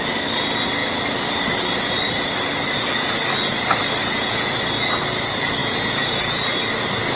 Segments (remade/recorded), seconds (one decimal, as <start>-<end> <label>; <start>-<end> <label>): 0.0-4.0 recorded; 4.0-4.6 remade; 4.6-5.6 recorded; 5.6-6.4 remade; 6.4-7.2 recorded